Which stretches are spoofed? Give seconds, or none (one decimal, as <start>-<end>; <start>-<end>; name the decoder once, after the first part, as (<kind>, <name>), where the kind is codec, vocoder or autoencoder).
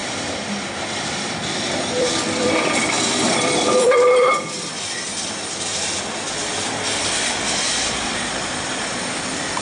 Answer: 0.0-5.1 (vocoder, BigVGAN v2); 7.4-9.6